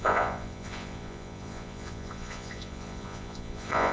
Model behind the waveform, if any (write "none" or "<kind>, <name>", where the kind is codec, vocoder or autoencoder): vocoder, Vocos